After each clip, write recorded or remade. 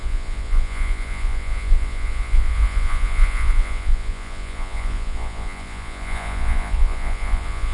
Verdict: remade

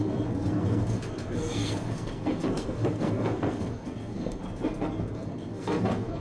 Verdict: remade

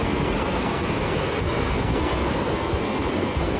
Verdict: remade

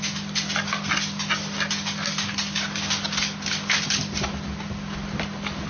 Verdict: recorded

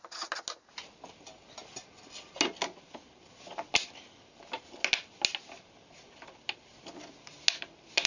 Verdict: recorded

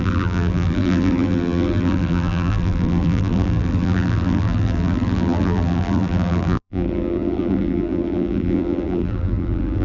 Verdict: remade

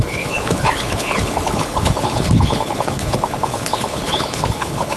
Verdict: remade